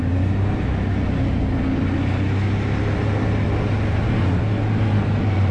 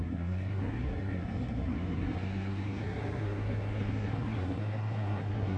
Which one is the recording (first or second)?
first